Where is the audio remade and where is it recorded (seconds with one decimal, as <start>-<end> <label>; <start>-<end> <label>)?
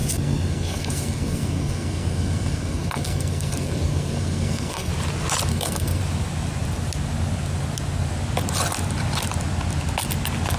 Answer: 0.0-4.9 remade; 4.9-5.5 recorded; 5.5-6.0 remade; 6.0-10.6 recorded